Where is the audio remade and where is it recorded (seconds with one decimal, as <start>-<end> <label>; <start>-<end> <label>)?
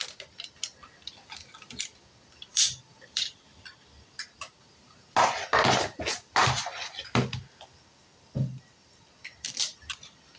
0.0-2.5 recorded; 2.5-3.7 remade; 3.7-6.4 recorded; 6.4-9.7 remade; 9.7-10.4 recorded